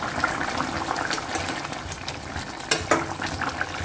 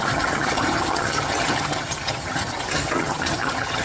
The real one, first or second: first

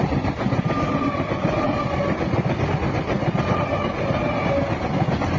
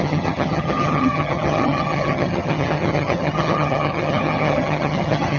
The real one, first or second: first